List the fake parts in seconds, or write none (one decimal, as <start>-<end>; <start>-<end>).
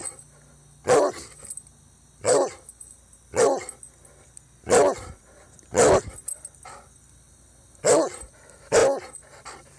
none